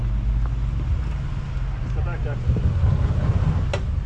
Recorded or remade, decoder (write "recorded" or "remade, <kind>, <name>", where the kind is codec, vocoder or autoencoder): recorded